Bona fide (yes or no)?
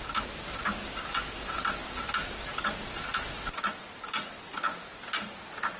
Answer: yes